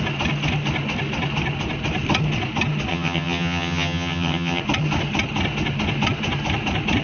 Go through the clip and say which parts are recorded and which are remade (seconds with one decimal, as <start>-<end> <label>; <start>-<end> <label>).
0.0-2.9 recorded; 2.9-4.6 remade; 4.6-7.0 recorded